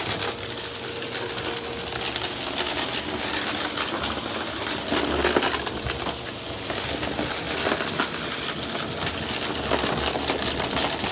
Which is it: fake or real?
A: real